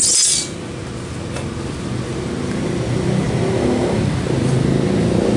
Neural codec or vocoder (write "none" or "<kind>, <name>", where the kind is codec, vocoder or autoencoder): none